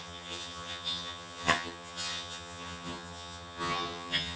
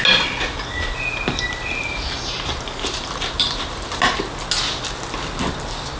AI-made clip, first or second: first